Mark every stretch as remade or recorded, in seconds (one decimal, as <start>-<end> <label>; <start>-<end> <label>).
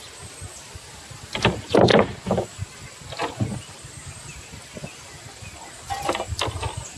0.0-1.9 recorded; 1.9-5.7 remade; 5.7-7.0 recorded